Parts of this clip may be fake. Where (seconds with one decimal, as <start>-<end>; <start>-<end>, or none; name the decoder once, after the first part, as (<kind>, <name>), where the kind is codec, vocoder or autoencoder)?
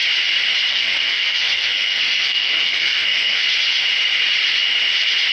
0.7-3.4 (codec, SNAC)